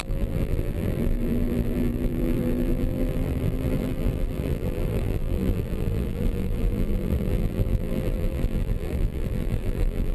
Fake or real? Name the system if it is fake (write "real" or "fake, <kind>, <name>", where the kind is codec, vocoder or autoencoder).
fake, vocoder, BigVGAN v2